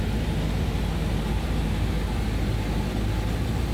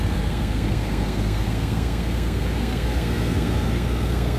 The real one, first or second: first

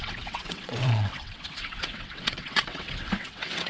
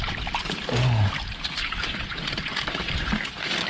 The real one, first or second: second